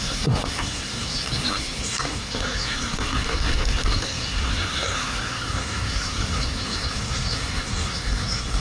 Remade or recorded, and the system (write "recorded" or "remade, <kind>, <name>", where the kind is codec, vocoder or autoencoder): remade, codec, SNAC